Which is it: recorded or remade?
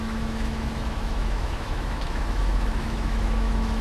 remade